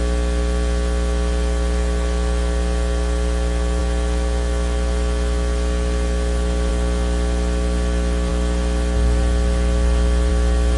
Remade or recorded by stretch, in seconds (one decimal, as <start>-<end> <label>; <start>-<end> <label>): 0.0-10.8 recorded

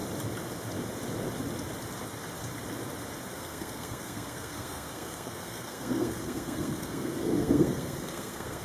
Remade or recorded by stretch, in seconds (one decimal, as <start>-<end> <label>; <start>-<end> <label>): 0.0-3.3 recorded; 3.3-8.6 remade

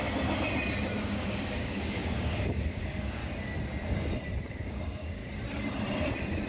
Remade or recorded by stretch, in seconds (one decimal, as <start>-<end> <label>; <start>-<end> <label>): 0.0-1.0 recorded; 1.0-3.2 remade; 3.2-4.5 recorded; 4.5-5.2 remade; 5.2-6.5 recorded

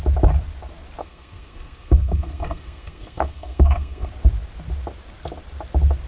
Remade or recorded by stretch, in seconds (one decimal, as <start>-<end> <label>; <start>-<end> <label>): 0.0-1.0 recorded; 1.0-4.1 remade; 4.1-6.1 recorded